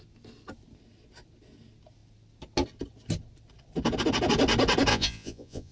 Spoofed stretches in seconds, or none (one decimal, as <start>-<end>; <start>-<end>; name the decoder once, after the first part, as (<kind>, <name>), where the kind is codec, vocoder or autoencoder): 4.9-5.7 (vocoder, Vocos)